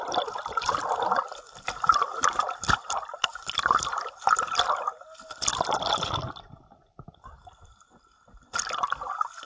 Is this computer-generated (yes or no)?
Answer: no